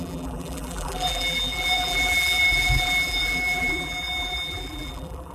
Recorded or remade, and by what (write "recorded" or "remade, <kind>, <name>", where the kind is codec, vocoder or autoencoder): remade, vocoder, BigVGAN v2